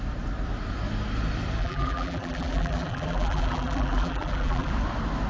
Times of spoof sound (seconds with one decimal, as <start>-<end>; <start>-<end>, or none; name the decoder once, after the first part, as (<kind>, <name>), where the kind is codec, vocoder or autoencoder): 1.6-4.7 (vocoder, BigVGAN v2)